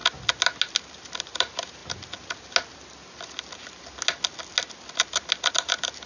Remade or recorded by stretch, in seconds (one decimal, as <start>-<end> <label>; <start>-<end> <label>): 0.0-6.1 recorded